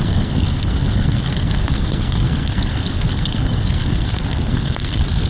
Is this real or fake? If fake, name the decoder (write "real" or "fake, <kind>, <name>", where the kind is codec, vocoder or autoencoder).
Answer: fake, codec, SNAC